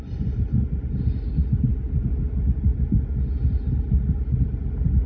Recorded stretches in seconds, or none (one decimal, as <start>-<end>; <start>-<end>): 0.0-5.1

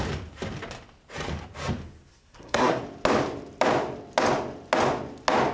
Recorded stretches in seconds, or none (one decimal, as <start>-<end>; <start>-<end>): 0.0-2.1; 2.8-5.5

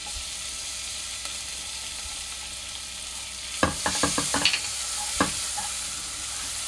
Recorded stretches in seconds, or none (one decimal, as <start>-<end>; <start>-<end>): 0.0-6.7

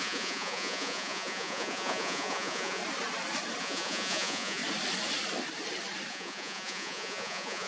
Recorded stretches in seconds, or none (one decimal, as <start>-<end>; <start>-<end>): 2.8-3.6; 4.6-6.1